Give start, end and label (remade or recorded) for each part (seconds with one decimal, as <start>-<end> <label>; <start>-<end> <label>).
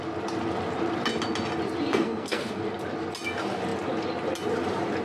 0.0-1.9 recorded; 1.9-2.6 remade; 2.6-5.0 recorded